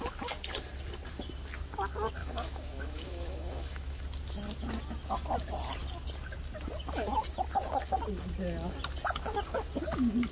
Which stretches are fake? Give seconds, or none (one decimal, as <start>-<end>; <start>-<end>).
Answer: 2.2-4.0